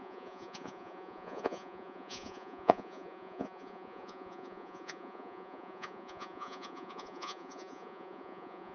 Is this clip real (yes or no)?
no